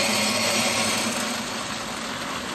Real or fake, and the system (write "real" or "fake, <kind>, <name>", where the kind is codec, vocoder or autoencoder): real